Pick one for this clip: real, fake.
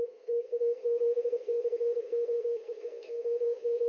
fake